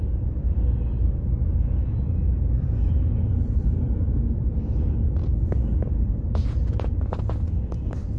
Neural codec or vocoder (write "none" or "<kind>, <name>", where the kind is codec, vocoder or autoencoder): none